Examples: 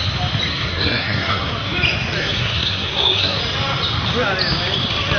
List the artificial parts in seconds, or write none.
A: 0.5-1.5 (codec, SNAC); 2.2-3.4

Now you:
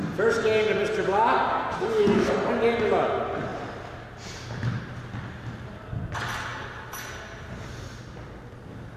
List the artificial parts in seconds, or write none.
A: 1.5-2.5 (codec, SNAC)

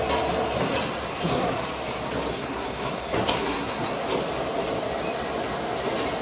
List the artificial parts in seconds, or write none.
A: 1.1-1.6 (codec, SNAC); 2.3-4.0

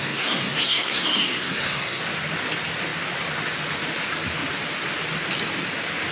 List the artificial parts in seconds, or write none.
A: 0.0-2.0 (codec, SNAC)

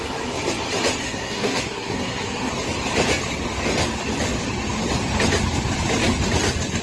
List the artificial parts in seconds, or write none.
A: 1.0-2.5 (codec, SNAC)

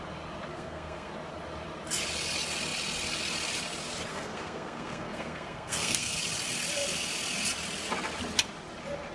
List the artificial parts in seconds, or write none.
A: 0.5-1.1 (codec, SNAC); 4.1-6.2

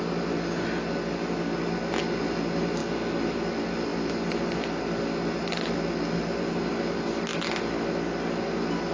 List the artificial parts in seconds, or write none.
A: none

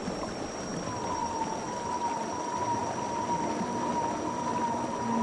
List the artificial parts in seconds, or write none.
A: none